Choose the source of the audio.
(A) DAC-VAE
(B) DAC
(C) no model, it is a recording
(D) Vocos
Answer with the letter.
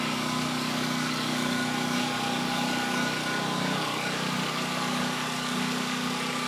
B